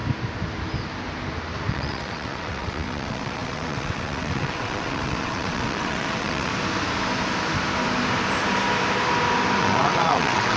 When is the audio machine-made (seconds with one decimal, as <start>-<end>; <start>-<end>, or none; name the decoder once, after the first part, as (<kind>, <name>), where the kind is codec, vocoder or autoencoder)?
1.7-6.5 (vocoder, WaveNeXt); 9.6-10.6